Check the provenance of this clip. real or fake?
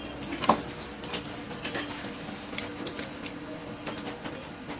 real